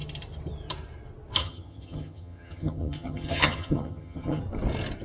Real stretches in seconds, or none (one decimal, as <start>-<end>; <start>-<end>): 0.0-1.4; 4.4-5.0